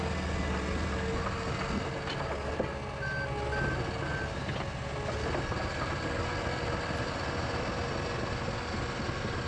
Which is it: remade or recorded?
recorded